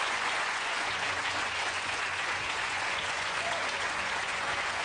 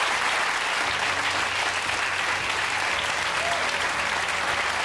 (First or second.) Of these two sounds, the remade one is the first